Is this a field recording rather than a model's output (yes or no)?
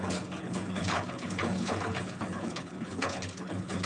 no